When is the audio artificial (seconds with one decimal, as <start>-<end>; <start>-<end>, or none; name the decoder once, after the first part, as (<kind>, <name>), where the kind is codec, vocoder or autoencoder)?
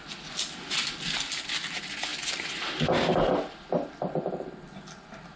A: none